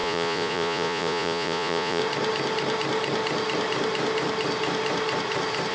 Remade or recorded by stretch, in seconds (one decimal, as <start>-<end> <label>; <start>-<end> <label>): 0.0-2.0 remade; 2.0-5.7 recorded